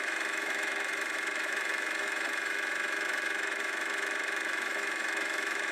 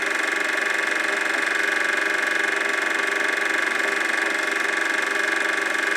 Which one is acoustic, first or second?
second